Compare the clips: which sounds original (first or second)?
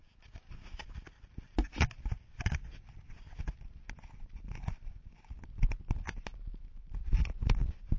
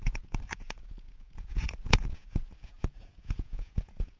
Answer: first